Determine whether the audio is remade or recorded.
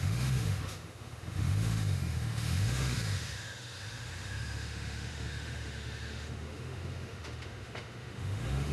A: remade